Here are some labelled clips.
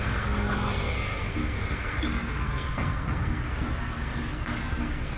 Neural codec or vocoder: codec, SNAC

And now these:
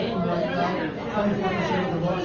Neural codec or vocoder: none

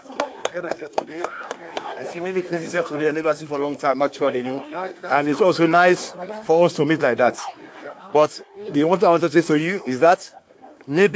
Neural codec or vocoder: codec, SNAC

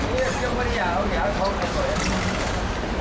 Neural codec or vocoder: none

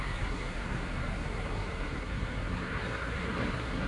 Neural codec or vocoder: codec, SNAC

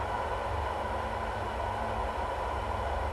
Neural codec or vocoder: none